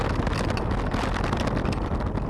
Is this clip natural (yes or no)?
yes